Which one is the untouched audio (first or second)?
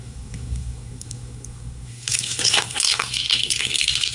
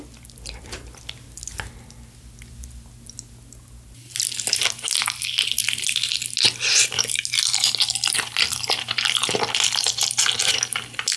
second